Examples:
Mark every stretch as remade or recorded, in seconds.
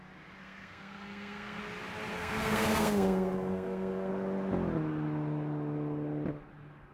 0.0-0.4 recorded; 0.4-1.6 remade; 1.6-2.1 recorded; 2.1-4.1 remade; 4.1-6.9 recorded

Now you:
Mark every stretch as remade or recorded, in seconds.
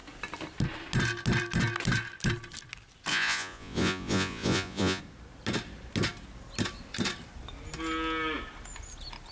0.0-3.1 recorded; 3.1-5.0 remade; 5.0-9.3 recorded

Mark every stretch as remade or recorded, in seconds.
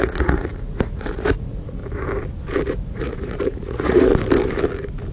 0.0-1.8 remade; 1.8-2.7 recorded; 2.7-4.1 remade; 4.1-5.1 recorded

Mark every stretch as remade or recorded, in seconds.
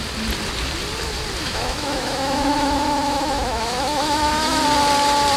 0.0-1.4 recorded; 1.4-4.6 remade; 4.6-5.4 recorded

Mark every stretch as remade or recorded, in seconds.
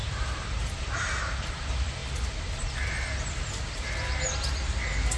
0.0-2.0 remade; 2.0-5.2 recorded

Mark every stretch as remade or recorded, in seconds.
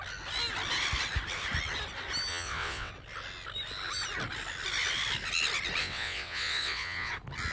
0.0-2.3 recorded; 2.3-2.9 remade; 2.9-5.8 recorded; 5.8-7.1 remade; 7.1-7.5 recorded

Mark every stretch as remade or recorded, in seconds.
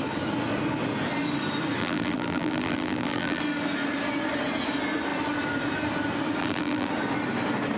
0.0-1.8 recorded; 1.8-3.4 remade; 3.4-6.4 recorded; 6.4-6.9 remade; 6.9-7.8 recorded